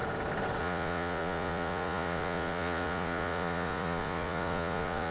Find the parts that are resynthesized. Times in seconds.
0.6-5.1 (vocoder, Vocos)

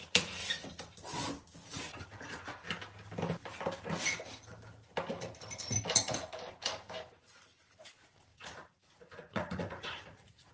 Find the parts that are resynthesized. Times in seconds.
0.0-0.4 (vocoder, Vocos); 1.8-2.6; 7.8-10.5

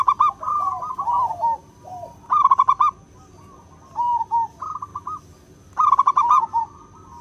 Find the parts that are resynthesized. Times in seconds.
none

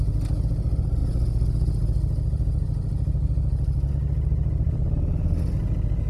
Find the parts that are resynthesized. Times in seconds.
none

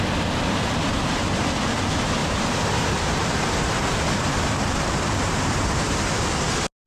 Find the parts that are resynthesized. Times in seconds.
2.2-6.3 (vocoder, BigVGAN v2)

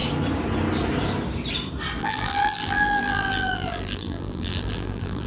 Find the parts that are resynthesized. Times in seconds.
2.0-5.3 (vocoder, BigVGAN v2)

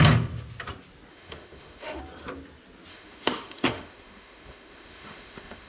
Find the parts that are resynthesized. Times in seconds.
1.1-2.0 (autoencoder, DAC-VAE); 2.9-5.7